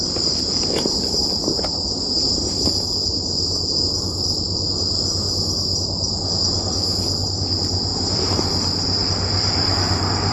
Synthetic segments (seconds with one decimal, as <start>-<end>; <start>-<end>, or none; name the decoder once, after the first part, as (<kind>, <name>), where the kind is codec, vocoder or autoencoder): 7.9-10.3 (vocoder, BigVGAN v2)